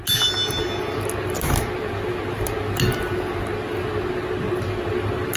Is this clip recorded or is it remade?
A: recorded